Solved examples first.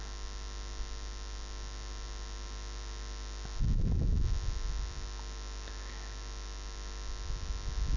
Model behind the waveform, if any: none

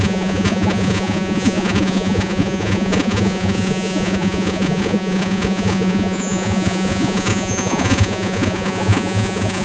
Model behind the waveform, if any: vocoder, Vocos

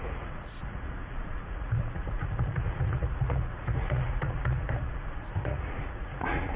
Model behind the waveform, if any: vocoder, Vocos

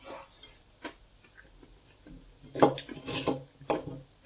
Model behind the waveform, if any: none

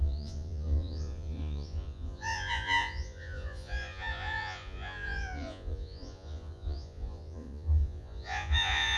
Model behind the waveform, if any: vocoder, Vocos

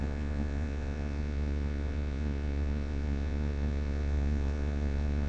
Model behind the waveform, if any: vocoder, Vocos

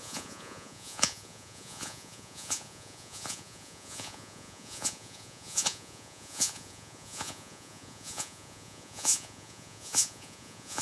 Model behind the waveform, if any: vocoder, Vocos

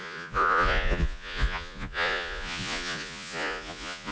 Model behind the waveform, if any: vocoder, Vocos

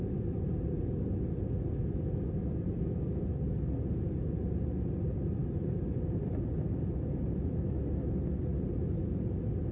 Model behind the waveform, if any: none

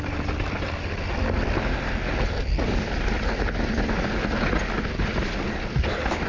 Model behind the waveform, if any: none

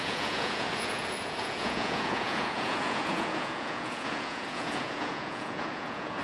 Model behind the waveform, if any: vocoder, Vocos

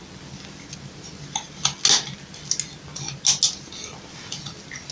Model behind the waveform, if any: none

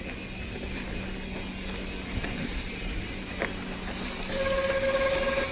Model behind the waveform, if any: none